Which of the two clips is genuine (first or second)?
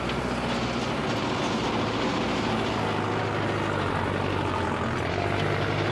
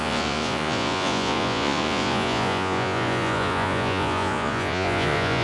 first